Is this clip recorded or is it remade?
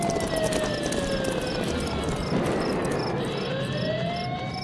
recorded